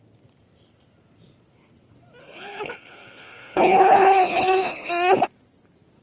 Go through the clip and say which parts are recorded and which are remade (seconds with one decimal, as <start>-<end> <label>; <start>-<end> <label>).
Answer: 0.0-2.2 recorded; 2.2-4.9 remade; 4.9-6.0 recorded